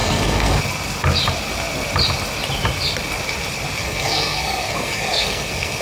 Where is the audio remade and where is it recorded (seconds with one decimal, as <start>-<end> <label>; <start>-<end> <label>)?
0.0-0.6 remade; 0.6-3.8 recorded; 3.8-5.8 remade